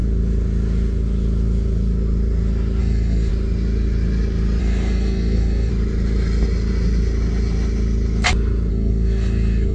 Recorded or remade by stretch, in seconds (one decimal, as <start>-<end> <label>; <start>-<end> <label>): 0.0-2.8 recorded; 2.8-3.3 remade; 3.3-4.6 recorded; 4.6-5.7 remade; 5.7-8.7 recorded; 8.7-9.7 remade